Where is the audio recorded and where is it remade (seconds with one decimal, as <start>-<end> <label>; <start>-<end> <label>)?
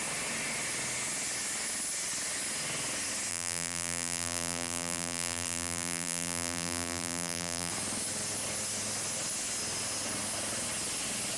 0.0-3.3 recorded; 3.3-7.7 remade; 7.7-11.4 recorded